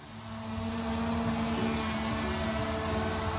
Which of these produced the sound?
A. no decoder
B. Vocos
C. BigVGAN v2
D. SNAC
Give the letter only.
A